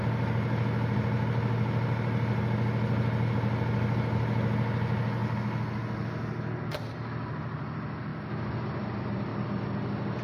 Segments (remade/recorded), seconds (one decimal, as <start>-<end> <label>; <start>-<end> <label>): 0.0-10.2 recorded